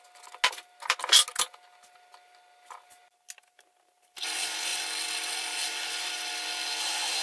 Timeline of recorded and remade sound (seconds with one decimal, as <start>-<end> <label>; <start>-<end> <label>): 0.0-7.2 recorded